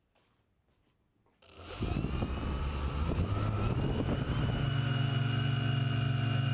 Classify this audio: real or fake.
real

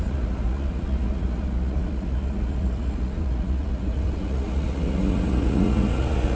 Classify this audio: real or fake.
fake